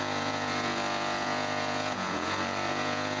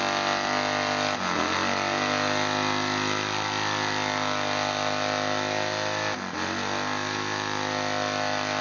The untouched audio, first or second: second